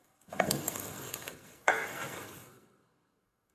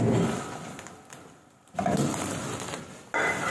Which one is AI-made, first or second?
first